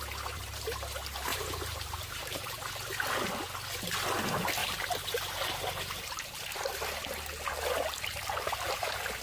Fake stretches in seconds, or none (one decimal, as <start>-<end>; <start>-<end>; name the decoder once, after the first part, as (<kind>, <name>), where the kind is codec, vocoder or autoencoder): 1.3-3.0 (vocoder, BigVGAN v2); 4.6-5.1